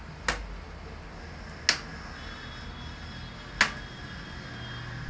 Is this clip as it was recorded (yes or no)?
yes